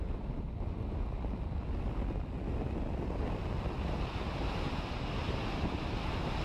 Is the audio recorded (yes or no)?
yes